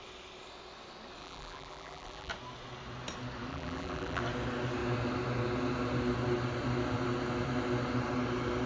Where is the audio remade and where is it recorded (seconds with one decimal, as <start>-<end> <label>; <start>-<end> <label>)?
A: 0.0-1.2 recorded; 1.2-2.3 remade; 2.3-3.5 recorded; 3.5-4.2 remade; 4.2-8.7 recorded